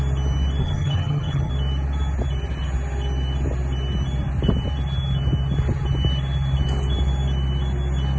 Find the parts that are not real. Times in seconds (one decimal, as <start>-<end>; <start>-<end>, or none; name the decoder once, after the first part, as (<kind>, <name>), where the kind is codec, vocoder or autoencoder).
0.6-1.5 (vocoder, HiFi-GAN)

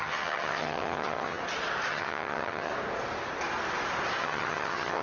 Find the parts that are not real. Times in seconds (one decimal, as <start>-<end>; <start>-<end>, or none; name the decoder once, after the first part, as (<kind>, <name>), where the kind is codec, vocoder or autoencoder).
0.0-1.4 (vocoder, HiFi-GAN); 1.9-2.7; 4.2-5.0